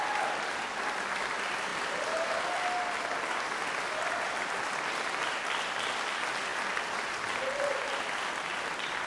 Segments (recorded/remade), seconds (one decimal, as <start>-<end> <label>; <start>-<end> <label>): 0.0-6.5 recorded; 6.5-9.1 remade